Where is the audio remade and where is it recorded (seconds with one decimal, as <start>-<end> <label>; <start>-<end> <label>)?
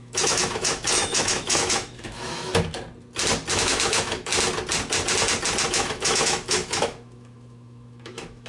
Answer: 0.0-2.5 remade; 2.5-3.5 recorded; 3.5-4.3 remade; 4.3-5.7 recorded; 5.7-8.5 remade